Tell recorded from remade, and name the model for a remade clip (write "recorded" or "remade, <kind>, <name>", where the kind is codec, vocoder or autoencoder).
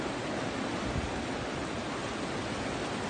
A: recorded